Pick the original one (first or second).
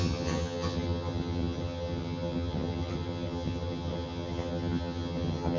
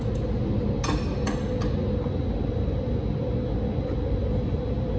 second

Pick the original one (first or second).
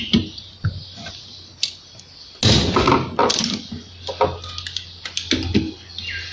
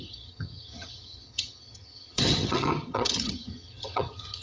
first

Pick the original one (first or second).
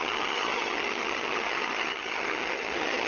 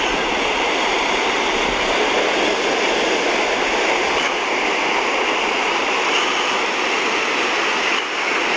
second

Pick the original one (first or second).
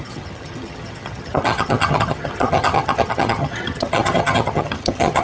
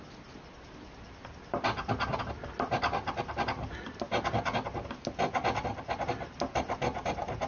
second